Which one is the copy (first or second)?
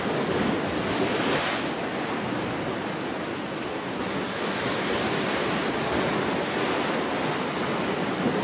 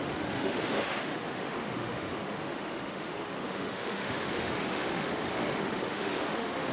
second